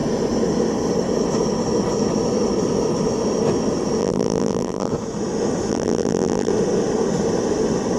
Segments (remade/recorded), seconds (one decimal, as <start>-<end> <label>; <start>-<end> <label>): 0.0-4.0 recorded; 4.0-4.9 remade; 4.9-5.7 recorded; 5.7-6.5 remade; 6.5-8.0 recorded